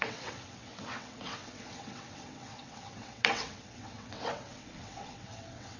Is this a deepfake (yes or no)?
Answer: yes